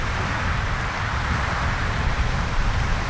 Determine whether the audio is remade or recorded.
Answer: remade